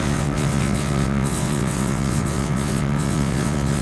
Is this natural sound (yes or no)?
no